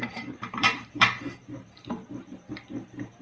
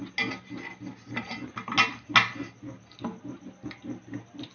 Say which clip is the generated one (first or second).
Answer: first